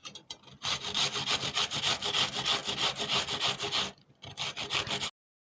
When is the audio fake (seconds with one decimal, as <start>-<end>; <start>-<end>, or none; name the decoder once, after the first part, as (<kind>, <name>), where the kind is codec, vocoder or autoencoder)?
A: none

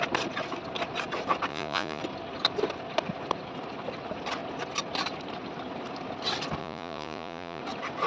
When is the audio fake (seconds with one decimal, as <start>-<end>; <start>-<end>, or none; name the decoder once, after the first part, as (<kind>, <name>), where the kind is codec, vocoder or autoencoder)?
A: 1.5-2.0 (vocoder, Vocos); 6.6-7.6

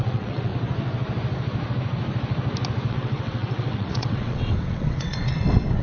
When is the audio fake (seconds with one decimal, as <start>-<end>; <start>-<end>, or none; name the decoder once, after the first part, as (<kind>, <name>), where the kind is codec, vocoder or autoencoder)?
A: 0.0-0.5 (vocoder, WaveNeXt); 2.9-5.8